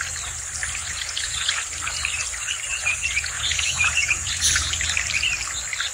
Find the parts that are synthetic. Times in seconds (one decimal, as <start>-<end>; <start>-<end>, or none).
0.8-1.6; 2.7-4.7